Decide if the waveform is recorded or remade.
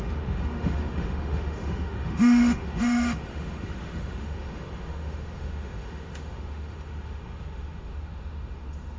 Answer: remade